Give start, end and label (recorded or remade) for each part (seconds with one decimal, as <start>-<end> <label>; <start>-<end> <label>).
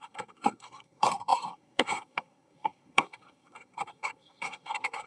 0.0-5.1 remade